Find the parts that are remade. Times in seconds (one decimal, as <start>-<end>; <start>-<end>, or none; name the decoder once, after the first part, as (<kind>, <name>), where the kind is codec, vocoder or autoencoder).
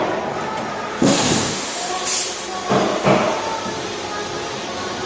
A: 0.9-1.9 (autoencoder, DAC-VAE)